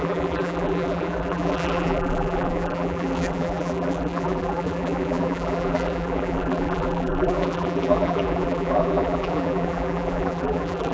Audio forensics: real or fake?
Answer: fake